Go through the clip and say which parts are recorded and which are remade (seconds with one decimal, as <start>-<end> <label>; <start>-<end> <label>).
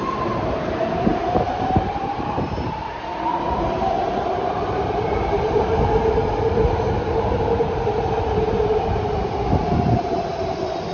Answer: 0.0-3.1 remade; 3.1-3.7 recorded; 3.7-10.9 remade